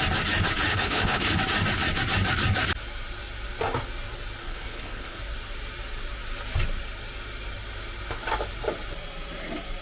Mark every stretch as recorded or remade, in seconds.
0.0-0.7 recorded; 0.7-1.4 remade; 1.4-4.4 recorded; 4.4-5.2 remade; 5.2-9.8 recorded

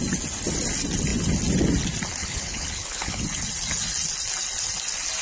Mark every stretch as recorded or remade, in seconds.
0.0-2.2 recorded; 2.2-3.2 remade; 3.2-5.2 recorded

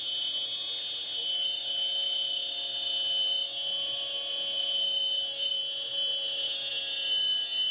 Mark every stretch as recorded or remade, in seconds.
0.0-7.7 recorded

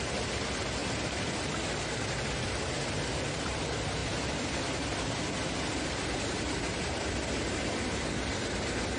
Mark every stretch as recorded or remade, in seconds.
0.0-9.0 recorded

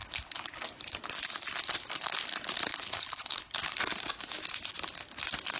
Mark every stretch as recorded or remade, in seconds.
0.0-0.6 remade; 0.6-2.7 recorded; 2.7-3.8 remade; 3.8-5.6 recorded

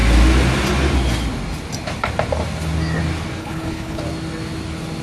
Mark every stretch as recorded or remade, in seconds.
0.0-3.4 recorded; 3.4-4.0 remade; 4.0-5.0 recorded